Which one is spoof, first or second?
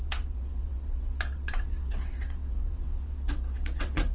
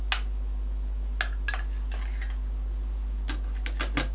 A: first